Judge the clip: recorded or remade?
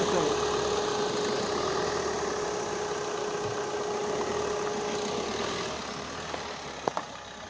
recorded